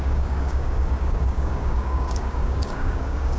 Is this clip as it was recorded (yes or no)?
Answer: no